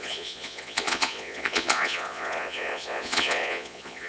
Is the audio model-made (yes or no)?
yes